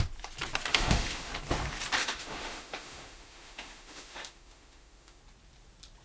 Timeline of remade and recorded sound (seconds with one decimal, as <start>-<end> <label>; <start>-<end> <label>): 0.0-0.7 recorded; 0.7-1.3 remade; 1.3-2.0 recorded; 2.0-5.2 remade; 5.2-6.0 recorded